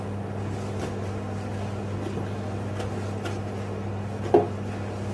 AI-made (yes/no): no